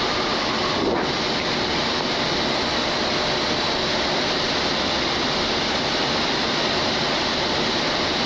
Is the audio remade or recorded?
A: recorded